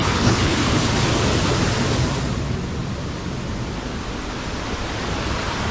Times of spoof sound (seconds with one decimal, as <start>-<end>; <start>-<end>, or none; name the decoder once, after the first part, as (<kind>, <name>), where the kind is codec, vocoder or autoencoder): 0.0-0.9 (codec, HILCodec)